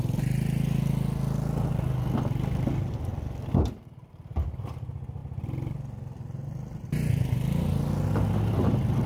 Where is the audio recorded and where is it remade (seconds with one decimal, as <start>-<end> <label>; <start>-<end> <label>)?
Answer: 0.0-9.1 recorded